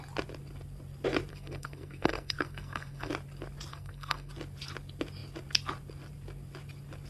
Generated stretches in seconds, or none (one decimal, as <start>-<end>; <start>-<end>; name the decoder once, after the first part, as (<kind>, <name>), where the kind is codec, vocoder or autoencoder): 1.3-3.1 (codec, SNAC); 3.7-4.3